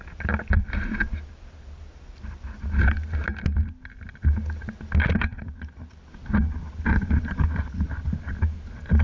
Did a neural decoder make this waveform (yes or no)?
no